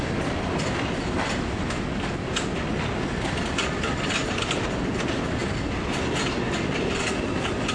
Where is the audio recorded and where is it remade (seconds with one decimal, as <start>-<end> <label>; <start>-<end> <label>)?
0.0-7.7 recorded